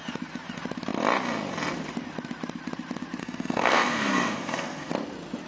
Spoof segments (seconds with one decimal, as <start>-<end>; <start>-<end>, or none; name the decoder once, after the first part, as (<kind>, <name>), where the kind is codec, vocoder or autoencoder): 3.2-4.9 (codec, SNAC)